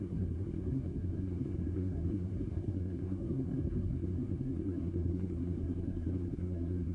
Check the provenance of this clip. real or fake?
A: fake